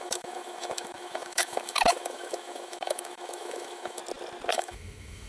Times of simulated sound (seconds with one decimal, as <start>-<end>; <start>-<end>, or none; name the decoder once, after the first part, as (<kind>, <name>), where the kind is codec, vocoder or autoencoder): 0.0-4.0 (autoencoder, DAC-VAE); 4.5-5.3